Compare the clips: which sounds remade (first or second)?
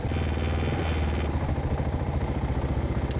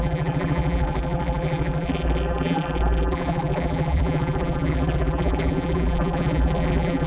second